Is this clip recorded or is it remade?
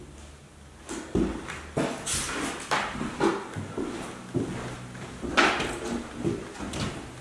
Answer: recorded